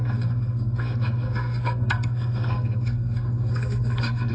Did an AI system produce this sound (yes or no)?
yes